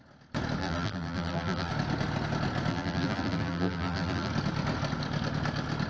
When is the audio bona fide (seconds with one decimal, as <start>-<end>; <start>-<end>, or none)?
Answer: 0.0-0.6; 1.7-2.7; 4.3-5.9